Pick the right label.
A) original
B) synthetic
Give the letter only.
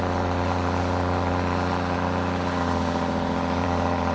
B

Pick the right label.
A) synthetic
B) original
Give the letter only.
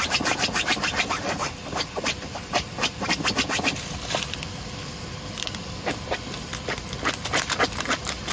A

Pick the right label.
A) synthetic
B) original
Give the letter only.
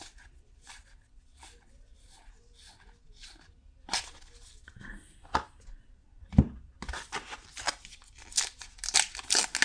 B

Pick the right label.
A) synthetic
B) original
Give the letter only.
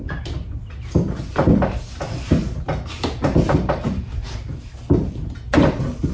B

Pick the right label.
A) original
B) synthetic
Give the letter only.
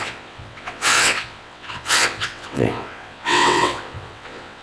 B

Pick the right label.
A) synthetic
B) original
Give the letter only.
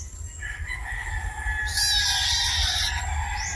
B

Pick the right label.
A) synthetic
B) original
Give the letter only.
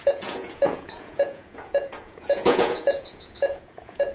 A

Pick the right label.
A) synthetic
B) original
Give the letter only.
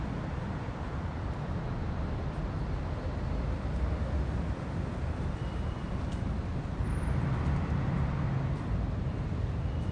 A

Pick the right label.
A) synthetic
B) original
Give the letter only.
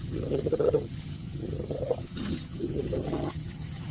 A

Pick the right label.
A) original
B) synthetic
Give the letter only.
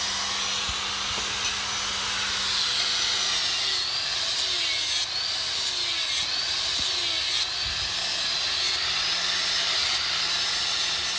A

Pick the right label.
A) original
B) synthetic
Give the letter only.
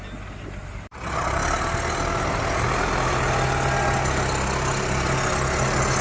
A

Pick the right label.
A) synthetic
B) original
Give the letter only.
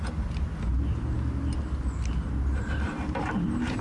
B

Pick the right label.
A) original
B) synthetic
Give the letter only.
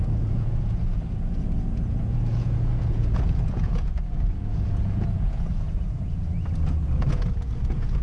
B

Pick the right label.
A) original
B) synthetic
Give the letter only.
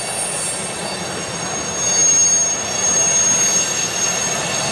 A